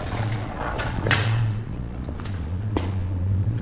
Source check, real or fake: fake